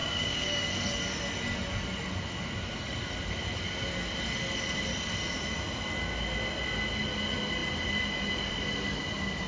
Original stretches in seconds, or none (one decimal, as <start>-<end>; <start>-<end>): 0.7-9.5